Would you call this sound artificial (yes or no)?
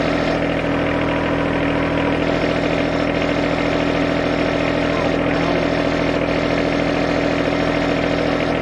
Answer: no